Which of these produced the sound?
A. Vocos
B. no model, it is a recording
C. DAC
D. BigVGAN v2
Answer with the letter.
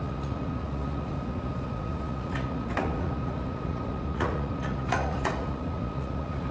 A